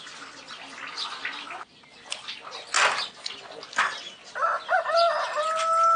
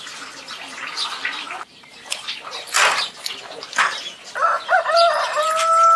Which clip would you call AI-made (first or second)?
second